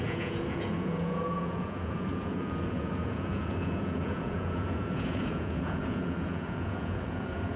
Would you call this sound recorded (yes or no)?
no